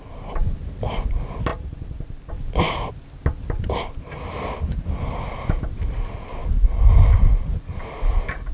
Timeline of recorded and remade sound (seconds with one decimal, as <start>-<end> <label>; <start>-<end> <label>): 0.0-8.5 recorded